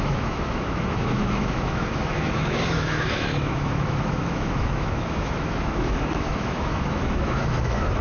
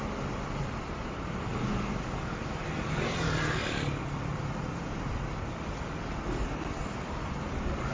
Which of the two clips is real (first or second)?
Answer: second